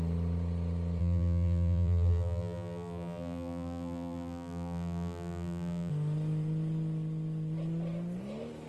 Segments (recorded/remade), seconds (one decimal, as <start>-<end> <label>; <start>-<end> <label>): 0.0-1.0 recorded; 1.0-5.9 remade; 5.9-8.7 recorded